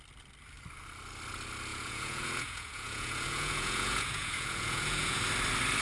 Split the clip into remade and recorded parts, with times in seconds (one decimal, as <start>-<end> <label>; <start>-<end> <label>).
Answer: 0.0-1.7 recorded; 1.7-5.2 remade; 5.2-5.8 recorded